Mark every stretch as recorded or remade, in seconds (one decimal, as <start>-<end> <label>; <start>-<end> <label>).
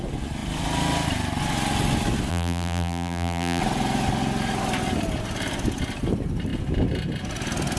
0.0-2.3 recorded; 2.3-3.6 remade; 3.6-7.8 recorded